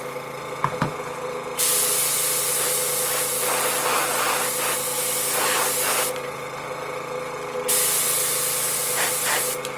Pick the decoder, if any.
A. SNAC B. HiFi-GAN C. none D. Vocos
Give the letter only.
C